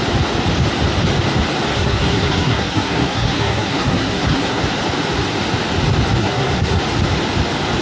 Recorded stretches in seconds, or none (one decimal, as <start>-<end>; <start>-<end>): 0.0-1.7; 4.6-6.2; 6.8-7.8